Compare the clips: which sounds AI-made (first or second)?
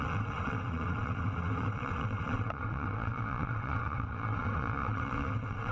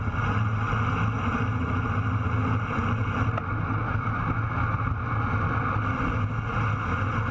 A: first